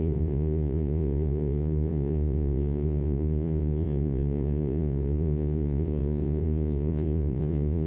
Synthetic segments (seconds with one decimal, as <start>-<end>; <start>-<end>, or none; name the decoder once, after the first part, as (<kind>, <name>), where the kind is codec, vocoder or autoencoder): 0.0-7.9 (vocoder, Vocos)